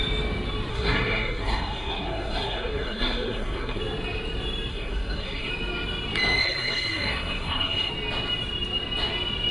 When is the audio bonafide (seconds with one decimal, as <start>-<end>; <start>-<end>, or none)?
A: 0.0-0.7; 3.8-4.7; 5.5-6.4; 7.9-9.5